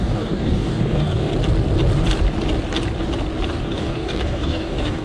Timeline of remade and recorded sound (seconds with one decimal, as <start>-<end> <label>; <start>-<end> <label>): 0.0-1.3 remade; 1.3-3.6 recorded; 3.6-5.0 remade

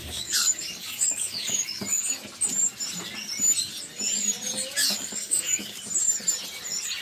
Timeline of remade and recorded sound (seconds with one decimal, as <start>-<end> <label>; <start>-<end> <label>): 0.0-1.8 remade; 1.8-4.8 recorded; 4.8-5.8 remade; 5.8-7.0 recorded

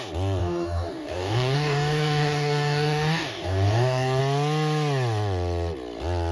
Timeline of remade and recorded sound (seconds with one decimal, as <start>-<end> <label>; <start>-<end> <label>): 0.0-0.4 recorded; 0.4-4.2 remade; 4.2-6.3 recorded

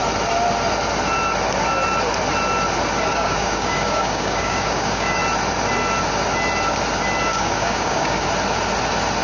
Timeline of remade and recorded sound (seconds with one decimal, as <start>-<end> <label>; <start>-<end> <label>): 0.0-3.1 recorded; 3.1-5.2 remade; 5.2-7.3 recorded; 7.3-8.2 remade; 8.2-9.2 recorded

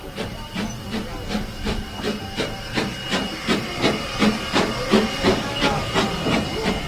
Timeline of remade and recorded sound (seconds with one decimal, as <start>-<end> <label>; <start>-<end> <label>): 0.0-5.3 recorded; 5.3-5.9 remade; 5.9-6.9 recorded